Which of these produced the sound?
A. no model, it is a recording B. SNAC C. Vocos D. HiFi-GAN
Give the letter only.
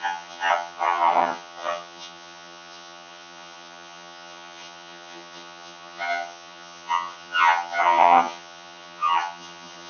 D